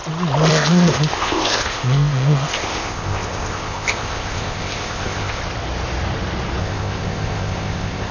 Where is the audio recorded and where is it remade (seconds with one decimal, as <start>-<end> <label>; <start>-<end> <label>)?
0.0-0.5 recorded; 0.5-5.4 remade; 5.4-6.6 recorded; 6.6-8.1 remade